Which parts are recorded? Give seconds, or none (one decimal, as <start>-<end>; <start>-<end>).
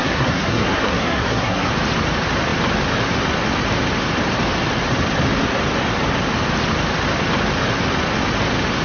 1.7-8.8